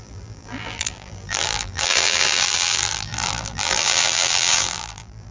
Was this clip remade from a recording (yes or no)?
yes